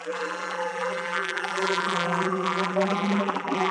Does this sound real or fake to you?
fake